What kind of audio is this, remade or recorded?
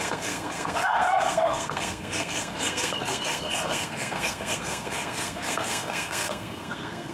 remade